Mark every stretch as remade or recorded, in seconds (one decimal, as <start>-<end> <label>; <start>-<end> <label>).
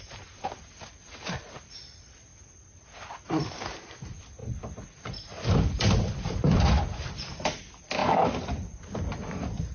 0.0-2.3 remade; 2.3-3.3 recorded; 3.3-8.0 remade; 8.0-8.8 recorded; 8.8-9.7 remade